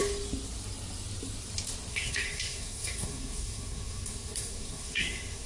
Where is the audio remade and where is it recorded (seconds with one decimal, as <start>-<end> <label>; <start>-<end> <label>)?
0.0-1.9 recorded; 1.9-5.5 remade